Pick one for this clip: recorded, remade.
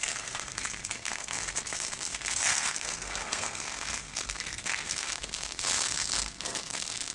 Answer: remade